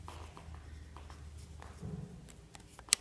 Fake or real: real